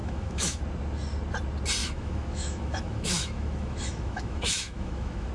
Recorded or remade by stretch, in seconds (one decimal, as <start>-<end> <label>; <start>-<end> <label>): 0.0-0.6 remade; 0.6-1.8 recorded; 1.8-5.3 remade